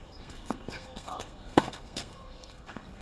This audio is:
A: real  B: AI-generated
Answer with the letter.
B